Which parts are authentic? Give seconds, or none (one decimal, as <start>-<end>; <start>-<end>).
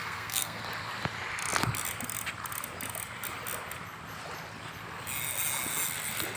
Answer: 0.6-6.4